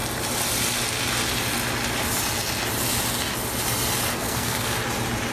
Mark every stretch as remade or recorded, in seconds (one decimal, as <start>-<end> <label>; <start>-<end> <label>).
0.0-4.1 recorded; 4.1-4.7 remade; 4.7-5.3 recorded